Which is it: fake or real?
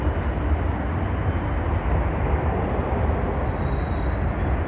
real